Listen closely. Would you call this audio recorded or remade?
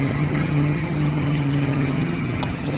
remade